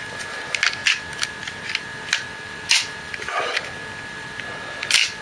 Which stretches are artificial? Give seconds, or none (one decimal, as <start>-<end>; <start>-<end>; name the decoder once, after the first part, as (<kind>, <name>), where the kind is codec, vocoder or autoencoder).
none